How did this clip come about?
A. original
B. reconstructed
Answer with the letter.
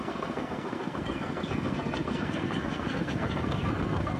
B